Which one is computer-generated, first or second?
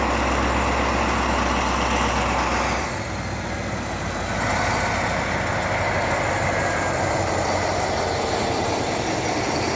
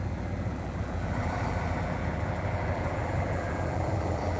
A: second